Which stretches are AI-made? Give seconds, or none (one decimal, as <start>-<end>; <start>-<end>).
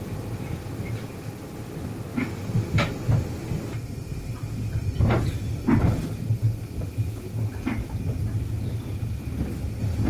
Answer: none